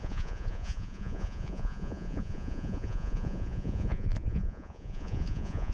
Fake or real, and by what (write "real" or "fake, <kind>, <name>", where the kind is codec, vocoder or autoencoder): fake, vocoder, Vocos